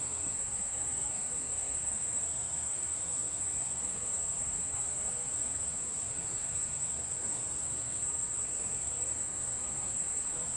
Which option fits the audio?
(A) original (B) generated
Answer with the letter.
B